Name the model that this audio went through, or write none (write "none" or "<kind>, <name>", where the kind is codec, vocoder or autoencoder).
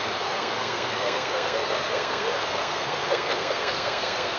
codec, SNAC